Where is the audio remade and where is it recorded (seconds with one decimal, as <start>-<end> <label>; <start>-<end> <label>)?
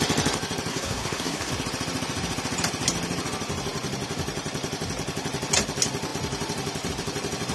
0.0-0.7 recorded; 0.7-1.5 remade; 1.5-7.5 recorded